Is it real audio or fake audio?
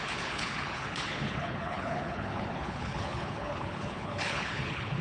fake